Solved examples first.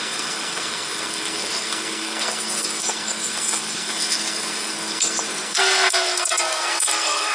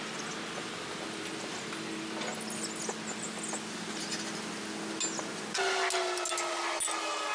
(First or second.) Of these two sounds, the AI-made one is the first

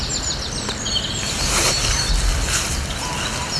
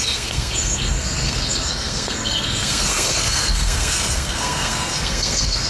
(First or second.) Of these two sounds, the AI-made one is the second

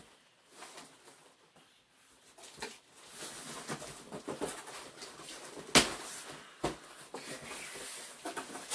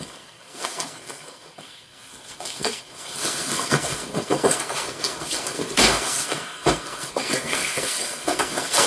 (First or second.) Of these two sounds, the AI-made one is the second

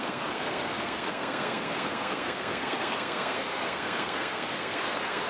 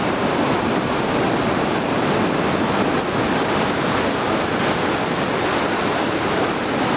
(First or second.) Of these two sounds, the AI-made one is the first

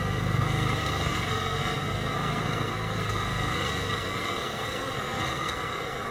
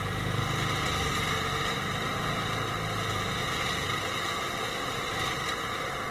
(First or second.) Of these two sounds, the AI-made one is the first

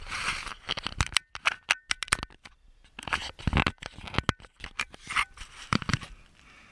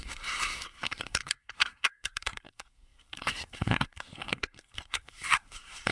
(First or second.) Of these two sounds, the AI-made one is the second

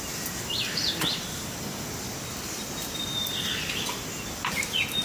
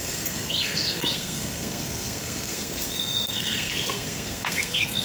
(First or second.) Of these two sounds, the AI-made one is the second